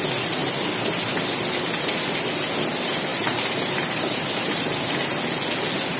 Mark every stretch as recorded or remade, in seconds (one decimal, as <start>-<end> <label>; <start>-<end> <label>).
0.0-3.1 recorded; 3.1-4.6 remade; 4.6-6.0 recorded